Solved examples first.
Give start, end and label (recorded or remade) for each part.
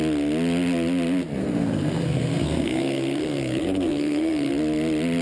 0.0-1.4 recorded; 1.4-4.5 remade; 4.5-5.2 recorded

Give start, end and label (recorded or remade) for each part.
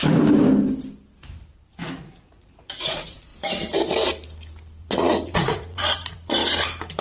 0.0-2.0 recorded; 2.0-3.3 remade; 3.3-4.8 recorded; 4.8-6.4 remade; 6.4-7.0 recorded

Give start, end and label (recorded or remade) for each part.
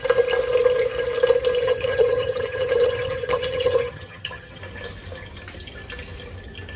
0.0-1.6 recorded; 1.6-4.6 remade; 4.6-6.8 recorded